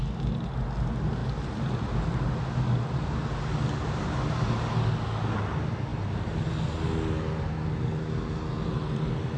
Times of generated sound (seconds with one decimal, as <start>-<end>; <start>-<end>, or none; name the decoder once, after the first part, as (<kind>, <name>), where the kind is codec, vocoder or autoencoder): none